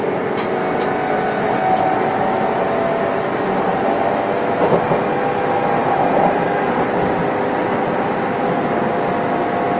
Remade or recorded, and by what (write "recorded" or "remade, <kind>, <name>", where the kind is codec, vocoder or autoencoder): recorded